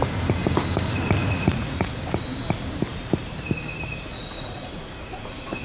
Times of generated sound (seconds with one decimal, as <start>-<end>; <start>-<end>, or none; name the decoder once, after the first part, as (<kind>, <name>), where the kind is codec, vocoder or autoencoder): 1.2-1.9 (vocoder, Vocos); 4.1-5.6